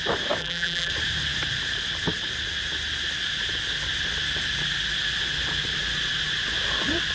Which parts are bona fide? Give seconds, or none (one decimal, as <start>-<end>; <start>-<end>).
0.0-0.4; 0.9-7.1